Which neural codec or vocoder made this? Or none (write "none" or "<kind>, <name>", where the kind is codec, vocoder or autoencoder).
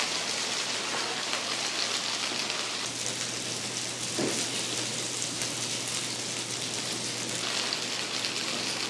none